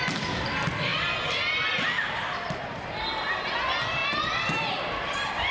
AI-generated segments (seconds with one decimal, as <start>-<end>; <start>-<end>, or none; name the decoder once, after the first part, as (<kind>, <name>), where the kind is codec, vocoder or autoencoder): none